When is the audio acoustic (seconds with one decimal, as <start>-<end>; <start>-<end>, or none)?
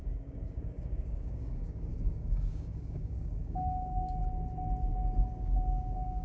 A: 4.2-4.9